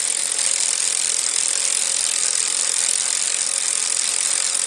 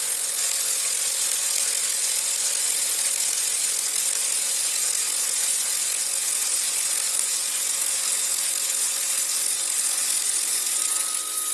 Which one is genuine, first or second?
first